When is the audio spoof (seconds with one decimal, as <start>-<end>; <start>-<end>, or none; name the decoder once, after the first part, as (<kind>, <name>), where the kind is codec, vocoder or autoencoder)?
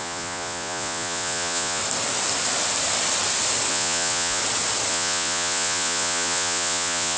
0.0-1.8 (vocoder, Vocos); 3.7-4.4; 4.9-7.2